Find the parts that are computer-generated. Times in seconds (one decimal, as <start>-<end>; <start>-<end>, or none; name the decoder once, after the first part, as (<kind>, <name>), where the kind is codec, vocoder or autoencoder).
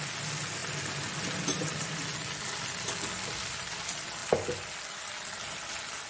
none